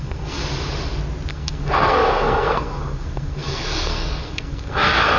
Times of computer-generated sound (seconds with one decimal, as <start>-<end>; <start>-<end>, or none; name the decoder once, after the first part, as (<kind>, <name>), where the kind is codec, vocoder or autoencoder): 0.0-0.4 (codec, SNAC); 1.3-5.2